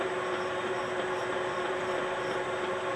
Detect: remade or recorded recorded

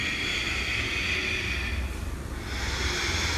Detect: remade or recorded recorded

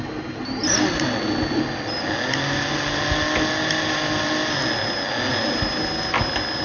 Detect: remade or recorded recorded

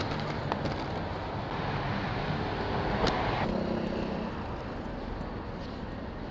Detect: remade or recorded recorded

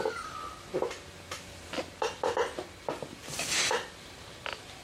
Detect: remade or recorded recorded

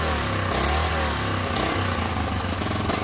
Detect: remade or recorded recorded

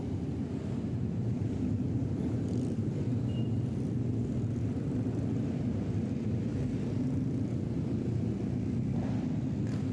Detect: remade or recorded remade